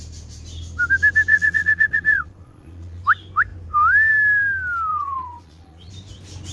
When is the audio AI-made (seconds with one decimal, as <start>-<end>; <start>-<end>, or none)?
1.3-3.0; 4.9-5.9